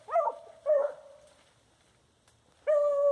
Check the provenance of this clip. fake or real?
real